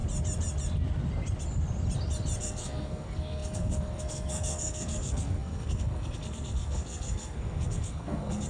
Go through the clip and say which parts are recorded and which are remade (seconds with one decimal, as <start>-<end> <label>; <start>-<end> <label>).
0.0-2.4 recorded; 2.4-8.5 remade